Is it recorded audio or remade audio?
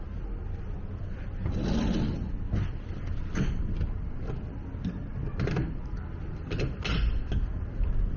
recorded